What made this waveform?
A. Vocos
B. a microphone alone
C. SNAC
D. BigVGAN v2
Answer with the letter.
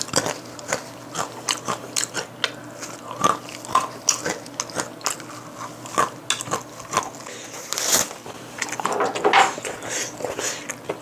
B